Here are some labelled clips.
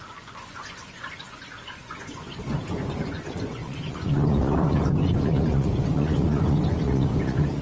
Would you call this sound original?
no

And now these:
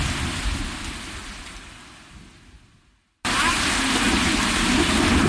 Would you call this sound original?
yes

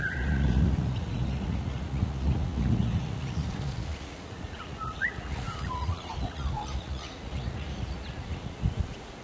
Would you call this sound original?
no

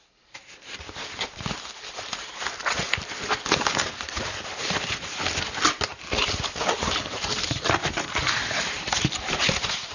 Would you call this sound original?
yes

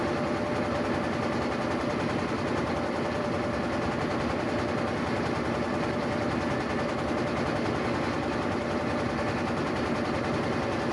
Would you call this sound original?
yes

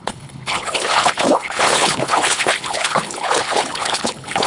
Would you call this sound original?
no